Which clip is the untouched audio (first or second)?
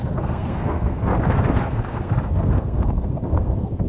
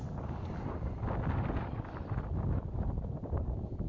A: second